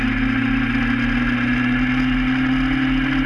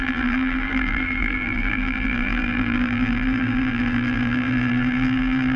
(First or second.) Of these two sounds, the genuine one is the first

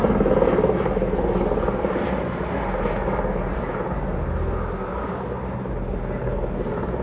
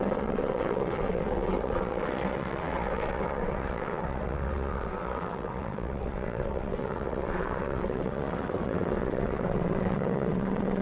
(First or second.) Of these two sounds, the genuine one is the first